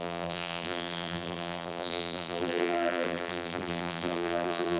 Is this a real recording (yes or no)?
no